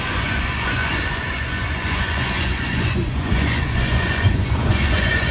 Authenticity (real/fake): fake